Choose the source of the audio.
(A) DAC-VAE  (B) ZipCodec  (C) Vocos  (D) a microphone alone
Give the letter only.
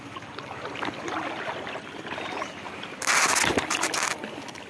D